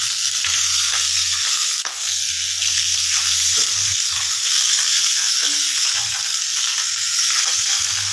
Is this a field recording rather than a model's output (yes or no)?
no